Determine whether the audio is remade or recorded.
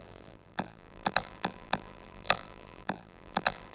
remade